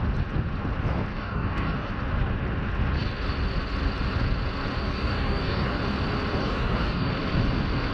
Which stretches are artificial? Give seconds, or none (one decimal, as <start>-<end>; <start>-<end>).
1.1-1.9; 4.8-5.8; 6.4-7.1

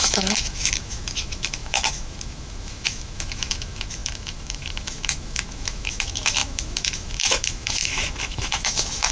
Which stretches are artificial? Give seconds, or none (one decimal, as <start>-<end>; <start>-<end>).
0.0-9.1